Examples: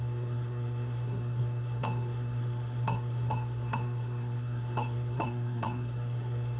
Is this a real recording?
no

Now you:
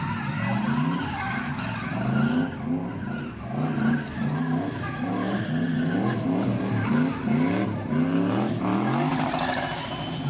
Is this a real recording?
yes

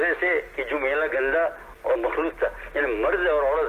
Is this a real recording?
yes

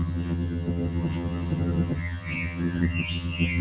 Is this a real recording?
no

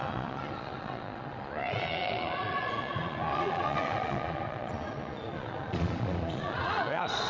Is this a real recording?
no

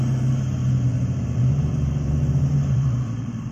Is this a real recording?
no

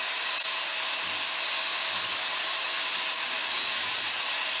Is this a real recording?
yes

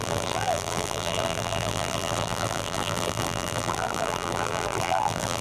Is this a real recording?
no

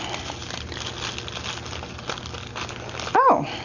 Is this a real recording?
yes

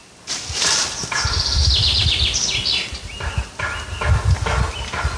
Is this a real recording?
yes